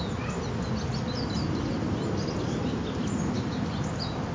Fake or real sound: real